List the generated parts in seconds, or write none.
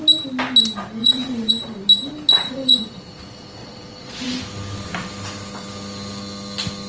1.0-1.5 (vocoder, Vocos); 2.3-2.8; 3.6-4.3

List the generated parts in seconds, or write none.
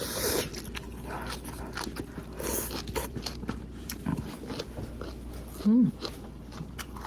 0.0-0.5 (vocoder, BigVGAN v2); 3.1-4.1; 5.9-7.1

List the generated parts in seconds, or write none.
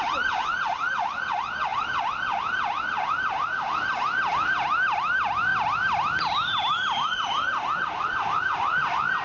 none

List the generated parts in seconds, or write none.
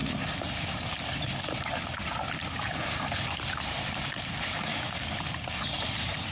2.8-4.7 (vocoder, BigVGAN v2)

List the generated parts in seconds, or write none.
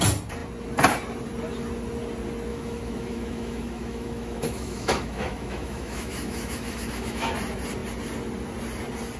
2.5-7.3 (autoencoder, DAC-VAE)